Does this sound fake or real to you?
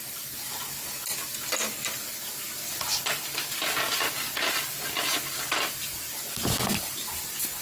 real